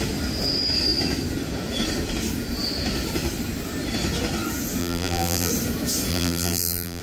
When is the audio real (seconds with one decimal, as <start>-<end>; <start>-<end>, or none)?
0.0-4.8; 5.5-6.1